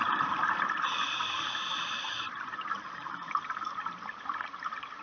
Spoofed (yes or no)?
no